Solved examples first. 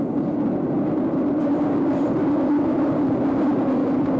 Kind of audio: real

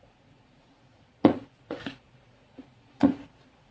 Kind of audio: fake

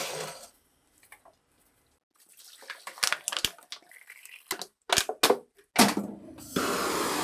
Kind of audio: real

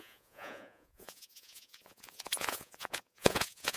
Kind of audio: fake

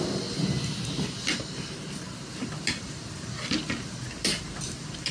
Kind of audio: real